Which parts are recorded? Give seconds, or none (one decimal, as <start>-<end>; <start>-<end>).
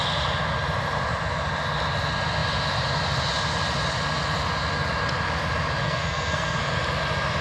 0.0-5.8; 6.6-7.4